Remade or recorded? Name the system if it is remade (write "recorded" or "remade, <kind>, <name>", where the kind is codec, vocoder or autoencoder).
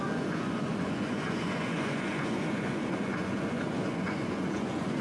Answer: remade, vocoder, Vocos